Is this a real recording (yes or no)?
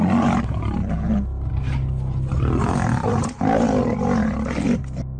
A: yes